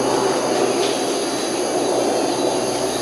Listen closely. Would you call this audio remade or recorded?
recorded